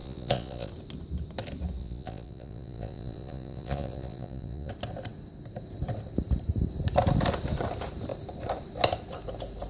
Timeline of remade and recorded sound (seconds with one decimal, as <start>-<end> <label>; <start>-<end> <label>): 0.0-0.7 remade; 0.7-1.8 recorded; 1.8-4.7 remade; 4.7-9.7 recorded